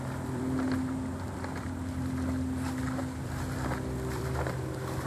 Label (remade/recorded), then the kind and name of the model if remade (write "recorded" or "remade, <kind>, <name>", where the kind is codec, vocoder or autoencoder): remade, vocoder, BigVGAN v2